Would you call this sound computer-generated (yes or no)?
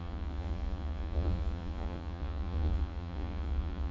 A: yes